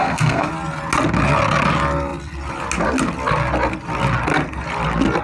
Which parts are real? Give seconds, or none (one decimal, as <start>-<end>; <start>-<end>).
0.5-5.2